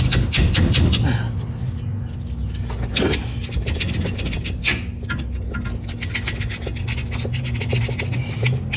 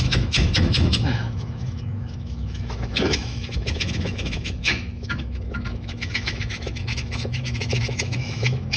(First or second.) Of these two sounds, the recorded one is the first